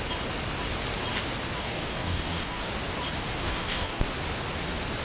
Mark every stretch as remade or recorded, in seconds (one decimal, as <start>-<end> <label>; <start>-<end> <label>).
0.0-1.6 recorded; 1.6-2.7 remade; 2.7-3.4 recorded; 3.4-4.0 remade; 4.0-5.0 recorded